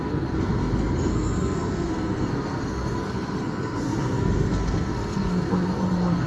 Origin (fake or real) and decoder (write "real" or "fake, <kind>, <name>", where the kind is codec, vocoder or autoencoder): fake, codec, SNAC